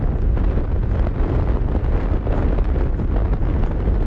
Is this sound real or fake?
real